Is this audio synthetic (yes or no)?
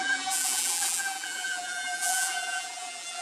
yes